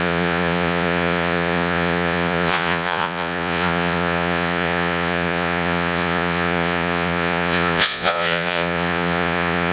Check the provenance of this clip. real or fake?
fake